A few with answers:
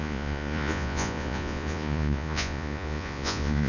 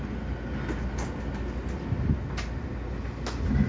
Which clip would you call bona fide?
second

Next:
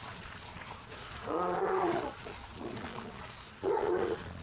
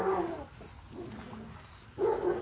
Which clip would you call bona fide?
second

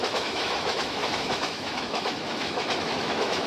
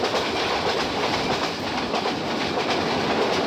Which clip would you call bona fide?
second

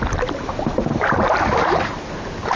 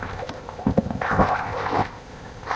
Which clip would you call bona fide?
first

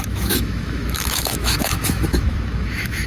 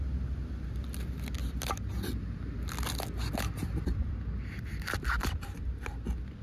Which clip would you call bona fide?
second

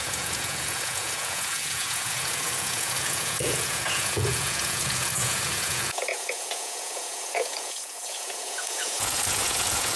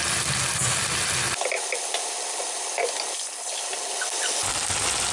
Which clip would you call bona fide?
second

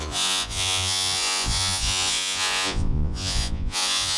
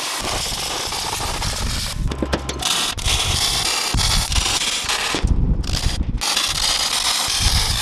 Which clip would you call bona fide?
second